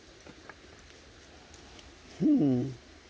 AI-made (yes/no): no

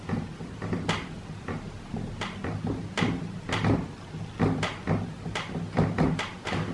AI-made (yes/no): no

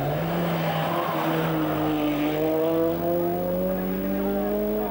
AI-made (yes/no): no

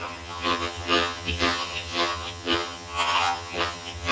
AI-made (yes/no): yes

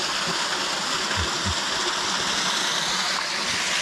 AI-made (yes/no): no